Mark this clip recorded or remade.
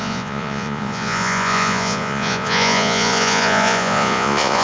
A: remade